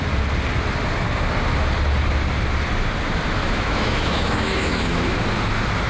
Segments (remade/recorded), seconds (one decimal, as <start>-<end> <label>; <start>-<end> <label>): 0.0-3.4 recorded; 3.4-5.2 remade; 5.2-5.9 recorded